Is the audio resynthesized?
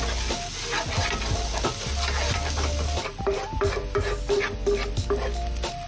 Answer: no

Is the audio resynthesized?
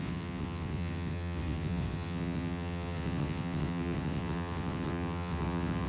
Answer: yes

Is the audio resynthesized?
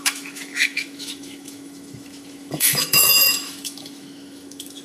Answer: yes